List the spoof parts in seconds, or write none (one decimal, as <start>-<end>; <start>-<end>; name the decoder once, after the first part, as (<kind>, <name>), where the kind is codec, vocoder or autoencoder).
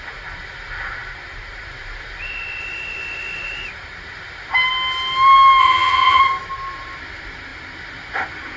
5.6-6.2 (vocoder, HiFi-GAN)